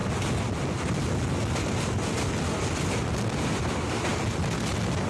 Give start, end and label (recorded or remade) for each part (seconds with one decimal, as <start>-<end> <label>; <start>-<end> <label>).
0.0-5.1 recorded